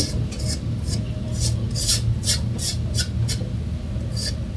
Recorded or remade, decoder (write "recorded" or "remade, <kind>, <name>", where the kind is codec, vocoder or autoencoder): recorded